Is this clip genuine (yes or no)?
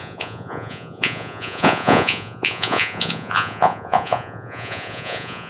no